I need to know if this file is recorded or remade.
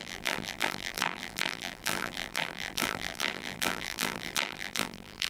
remade